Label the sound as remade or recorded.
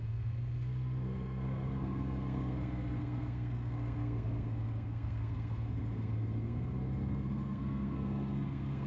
remade